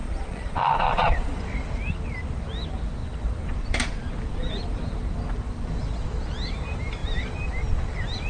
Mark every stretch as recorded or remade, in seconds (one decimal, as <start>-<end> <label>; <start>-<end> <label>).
0.0-1.4 remade; 1.4-8.3 recorded